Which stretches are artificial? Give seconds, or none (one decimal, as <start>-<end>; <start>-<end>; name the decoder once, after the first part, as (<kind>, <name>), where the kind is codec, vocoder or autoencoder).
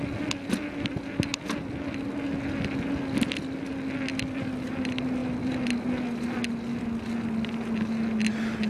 1.3-1.9 (vocoder, BigVGAN v2); 5.2-5.9